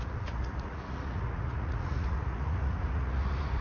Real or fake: fake